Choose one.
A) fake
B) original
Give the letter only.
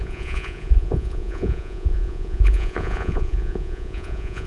A